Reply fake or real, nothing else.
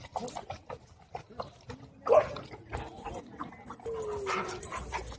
real